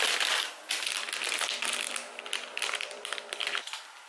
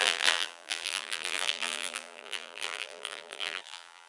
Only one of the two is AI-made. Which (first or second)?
second